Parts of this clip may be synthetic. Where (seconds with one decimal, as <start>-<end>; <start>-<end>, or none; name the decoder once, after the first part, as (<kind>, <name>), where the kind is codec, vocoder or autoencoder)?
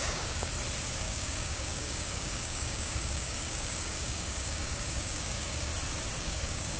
0.0-0.5 (codec, DAC); 1.0-5.7; 6.2-6.8